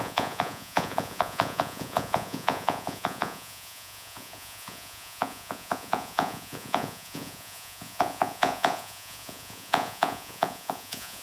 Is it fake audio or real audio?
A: fake